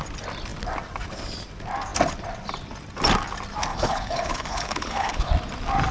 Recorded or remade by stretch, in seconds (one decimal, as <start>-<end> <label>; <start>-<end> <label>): 0.0-3.7 recorded; 3.7-5.3 remade; 5.3-5.9 recorded